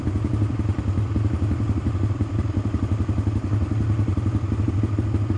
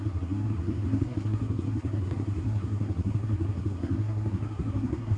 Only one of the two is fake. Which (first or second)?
second